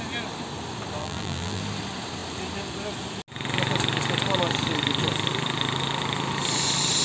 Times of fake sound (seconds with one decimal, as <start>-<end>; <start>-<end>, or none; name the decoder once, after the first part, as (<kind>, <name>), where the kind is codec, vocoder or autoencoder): 1.0-1.6 (vocoder, BigVGAN v2)